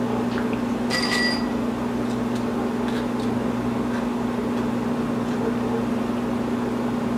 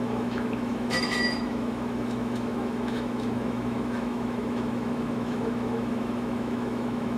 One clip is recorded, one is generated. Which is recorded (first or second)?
first